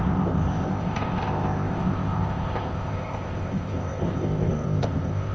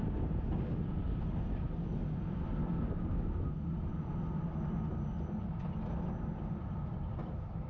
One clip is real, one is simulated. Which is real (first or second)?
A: second